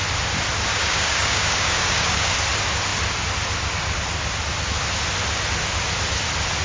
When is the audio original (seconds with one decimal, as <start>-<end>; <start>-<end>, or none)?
0.0-0.7; 2.3-6.6